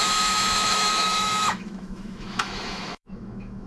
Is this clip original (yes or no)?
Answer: no